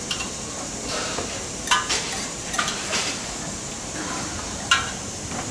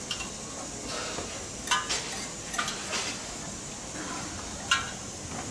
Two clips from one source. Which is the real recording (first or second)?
second